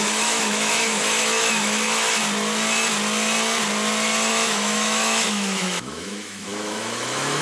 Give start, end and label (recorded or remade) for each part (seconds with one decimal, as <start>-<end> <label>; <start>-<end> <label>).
0.0-2.2 remade; 2.2-4.3 recorded; 4.3-7.4 remade